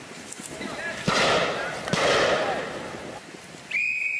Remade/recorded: recorded